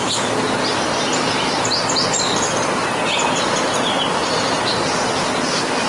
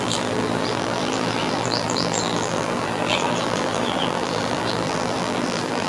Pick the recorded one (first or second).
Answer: first